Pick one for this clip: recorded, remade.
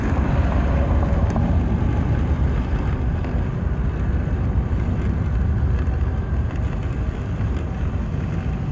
recorded